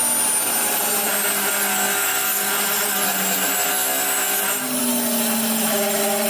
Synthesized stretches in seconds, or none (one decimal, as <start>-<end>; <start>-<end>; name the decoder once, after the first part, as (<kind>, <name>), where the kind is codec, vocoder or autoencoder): none